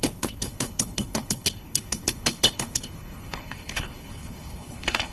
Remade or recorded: remade